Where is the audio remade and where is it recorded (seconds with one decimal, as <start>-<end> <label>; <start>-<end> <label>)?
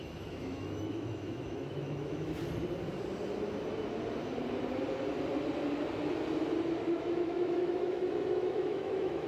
0.0-2.4 remade; 2.4-6.9 recorded; 6.9-9.3 remade